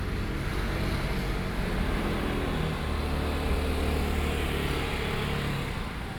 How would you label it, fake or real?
real